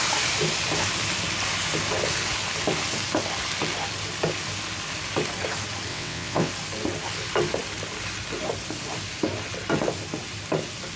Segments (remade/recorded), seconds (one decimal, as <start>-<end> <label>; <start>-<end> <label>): 0.0-5.9 recorded; 5.9-6.5 remade; 6.5-11.0 recorded